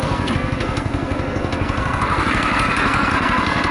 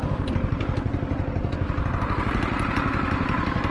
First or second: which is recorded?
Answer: second